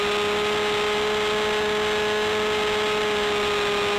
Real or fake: real